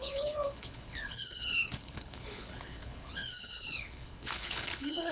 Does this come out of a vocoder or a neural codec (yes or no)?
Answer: yes